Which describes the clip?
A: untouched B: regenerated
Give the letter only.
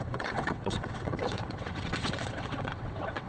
B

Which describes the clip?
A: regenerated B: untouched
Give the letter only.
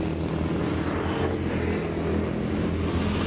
B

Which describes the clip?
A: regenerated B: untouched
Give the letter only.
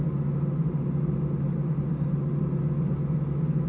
B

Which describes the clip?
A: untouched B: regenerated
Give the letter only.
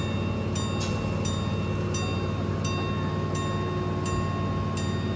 A